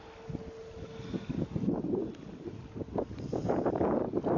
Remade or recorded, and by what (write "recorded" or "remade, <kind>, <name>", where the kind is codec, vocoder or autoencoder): recorded